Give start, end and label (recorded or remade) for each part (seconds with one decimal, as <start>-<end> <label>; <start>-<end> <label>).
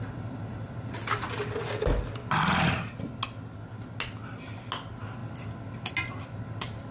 0.0-6.9 recorded